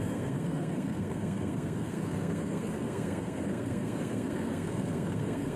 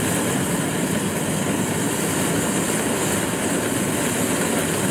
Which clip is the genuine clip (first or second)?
second